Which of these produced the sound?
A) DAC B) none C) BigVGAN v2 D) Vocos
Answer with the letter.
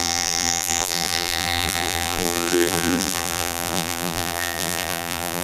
C